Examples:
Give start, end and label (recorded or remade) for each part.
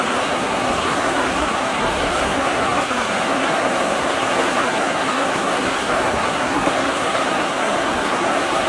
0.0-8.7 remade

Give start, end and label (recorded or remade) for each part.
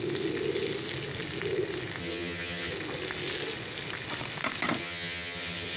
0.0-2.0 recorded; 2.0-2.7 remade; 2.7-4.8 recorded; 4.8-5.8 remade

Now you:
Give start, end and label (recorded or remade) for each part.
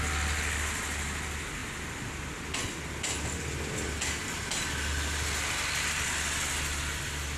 0.0-7.4 recorded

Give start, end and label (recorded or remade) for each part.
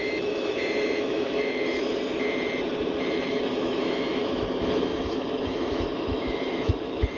0.0-1.9 remade; 1.9-3.3 recorded; 3.3-7.2 remade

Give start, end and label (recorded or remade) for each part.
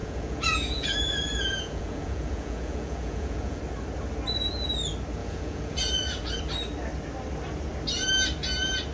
0.0-3.6 remade; 3.6-5.2 recorded; 5.2-6.4 remade; 6.4-8.9 recorded